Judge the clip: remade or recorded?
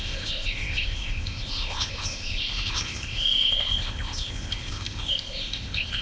remade